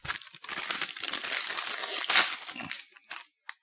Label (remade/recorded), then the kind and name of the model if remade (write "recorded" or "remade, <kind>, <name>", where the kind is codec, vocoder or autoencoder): recorded